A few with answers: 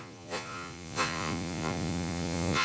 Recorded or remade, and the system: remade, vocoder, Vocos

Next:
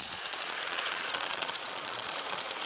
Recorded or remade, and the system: remade, vocoder, Vocos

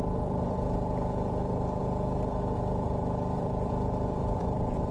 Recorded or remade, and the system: remade, vocoder, BigVGAN v2